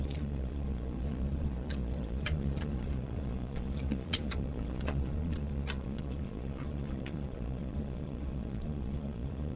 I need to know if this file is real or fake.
fake